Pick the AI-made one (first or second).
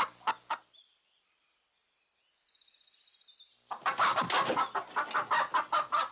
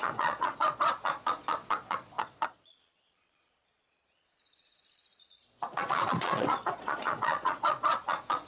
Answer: second